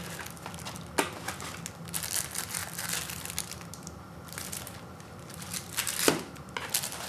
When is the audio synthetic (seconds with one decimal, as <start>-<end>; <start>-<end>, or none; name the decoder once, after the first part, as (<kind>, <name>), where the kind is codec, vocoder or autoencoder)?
none